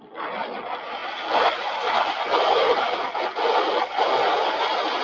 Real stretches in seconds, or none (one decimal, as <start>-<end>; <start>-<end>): 0.0-5.0

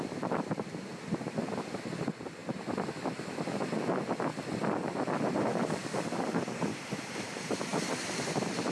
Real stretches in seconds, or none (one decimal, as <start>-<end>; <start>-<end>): 0.0-5.5; 6.7-8.7

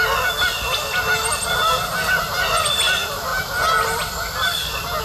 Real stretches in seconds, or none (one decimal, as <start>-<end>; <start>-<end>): 0.0-5.0

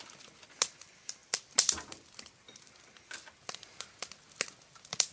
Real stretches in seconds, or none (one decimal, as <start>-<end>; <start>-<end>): 0.0-5.1

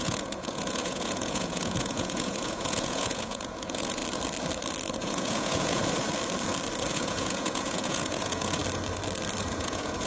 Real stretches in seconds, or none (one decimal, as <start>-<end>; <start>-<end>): 4.0-5.0; 5.8-6.9; 8.6-9.4

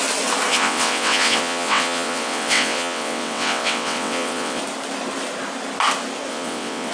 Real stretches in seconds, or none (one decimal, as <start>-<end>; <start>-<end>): 0.0-0.5; 4.6-6.3

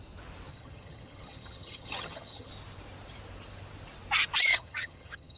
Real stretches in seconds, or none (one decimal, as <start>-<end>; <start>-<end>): 0.0-0.5; 2.5-4.5